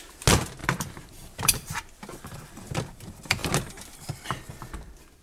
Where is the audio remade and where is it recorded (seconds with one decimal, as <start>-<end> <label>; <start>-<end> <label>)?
0.0-0.6 recorded; 0.6-2.5 remade; 2.5-5.2 recorded